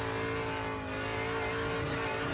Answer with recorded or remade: recorded